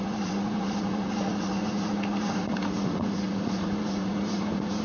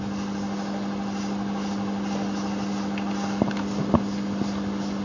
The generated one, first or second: first